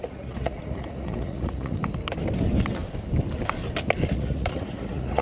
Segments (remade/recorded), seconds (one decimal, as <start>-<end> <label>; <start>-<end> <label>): 0.0-1.8 remade; 1.8-4.1 recorded; 4.1-5.2 remade